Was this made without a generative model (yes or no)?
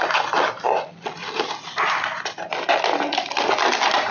yes